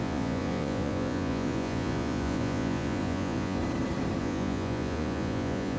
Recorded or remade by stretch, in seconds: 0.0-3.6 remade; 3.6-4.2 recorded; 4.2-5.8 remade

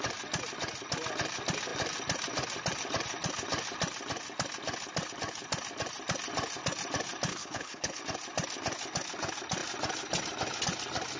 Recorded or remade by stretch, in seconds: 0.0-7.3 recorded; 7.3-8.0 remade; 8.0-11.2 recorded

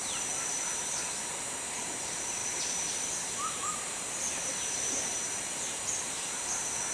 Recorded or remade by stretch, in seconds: 0.0-0.9 remade; 0.9-2.4 recorded; 2.4-6.5 remade; 6.5-6.9 recorded

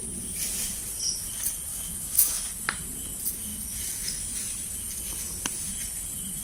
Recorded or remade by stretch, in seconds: 0.0-1.7 recorded; 1.7-2.5 remade; 2.5-6.4 recorded

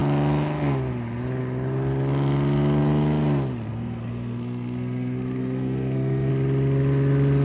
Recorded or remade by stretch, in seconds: 0.0-3.7 recorded; 3.7-6.3 remade; 6.3-7.4 recorded